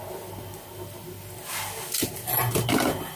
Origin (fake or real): real